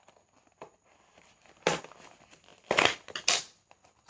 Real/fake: real